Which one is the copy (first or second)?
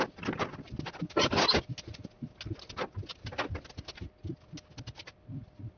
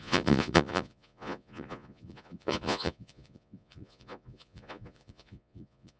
second